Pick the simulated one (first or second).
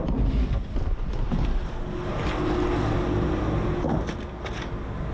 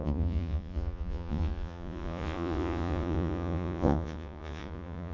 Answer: second